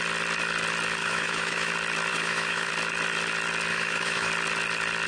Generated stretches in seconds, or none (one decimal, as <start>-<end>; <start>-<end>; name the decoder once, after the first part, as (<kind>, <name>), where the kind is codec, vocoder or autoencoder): 1.0-1.7 (autoencoder, DAC-VAE); 2.1-2.7; 3.7-4.3

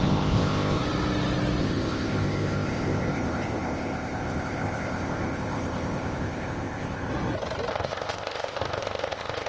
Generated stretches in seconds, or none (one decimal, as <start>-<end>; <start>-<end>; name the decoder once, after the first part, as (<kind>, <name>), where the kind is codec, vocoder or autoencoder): 0.0-0.8 (codec, ZipCodec); 1.6-7.1; 7.7-9.5

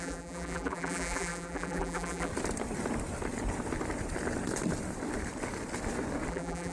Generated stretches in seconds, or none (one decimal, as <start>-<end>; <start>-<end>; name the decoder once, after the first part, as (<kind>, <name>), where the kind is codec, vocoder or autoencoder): 0.0-2.3 (vocoder, BigVGAN v2); 6.3-6.7

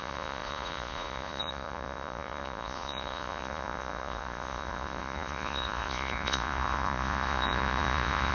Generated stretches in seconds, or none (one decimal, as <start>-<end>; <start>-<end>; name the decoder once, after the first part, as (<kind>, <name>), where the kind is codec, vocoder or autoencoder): 0.0-8.3 (vocoder, Vocos)

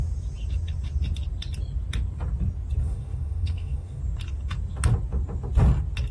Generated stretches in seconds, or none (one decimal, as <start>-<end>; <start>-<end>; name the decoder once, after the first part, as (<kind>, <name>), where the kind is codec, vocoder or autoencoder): 2.8-4.0 (autoencoder, DAC-VAE)